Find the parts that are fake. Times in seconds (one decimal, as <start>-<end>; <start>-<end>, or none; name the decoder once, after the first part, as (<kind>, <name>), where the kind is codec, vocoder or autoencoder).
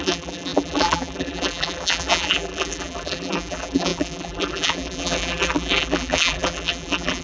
0.0-7.2 (vocoder, BigVGAN v2)